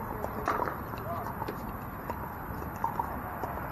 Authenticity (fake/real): real